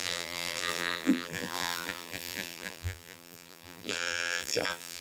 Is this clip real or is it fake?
fake